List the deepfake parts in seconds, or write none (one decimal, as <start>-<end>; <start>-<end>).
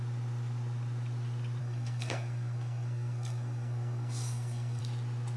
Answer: 1.6-4.8